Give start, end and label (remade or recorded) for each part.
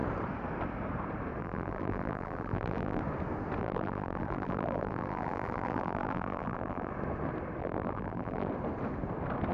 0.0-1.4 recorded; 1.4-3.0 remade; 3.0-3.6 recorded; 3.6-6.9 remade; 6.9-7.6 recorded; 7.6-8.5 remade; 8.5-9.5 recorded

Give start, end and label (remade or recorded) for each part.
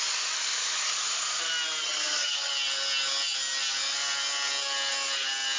0.0-1.8 recorded; 1.8-2.5 remade; 2.5-5.6 recorded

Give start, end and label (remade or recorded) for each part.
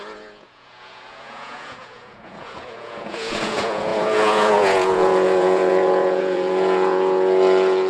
0.0-7.9 remade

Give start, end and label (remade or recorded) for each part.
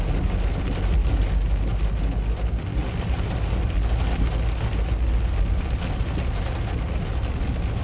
0.0-7.8 recorded